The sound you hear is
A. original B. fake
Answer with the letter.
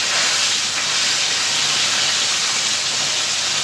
A